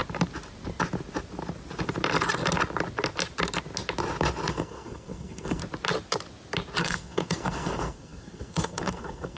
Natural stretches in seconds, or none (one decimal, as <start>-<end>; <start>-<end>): 0.0-4.5; 5.6-6.8